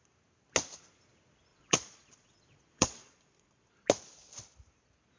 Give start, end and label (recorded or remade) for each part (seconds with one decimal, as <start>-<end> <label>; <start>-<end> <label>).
0.0-1.5 recorded; 1.5-3.7 remade; 3.7-5.2 recorded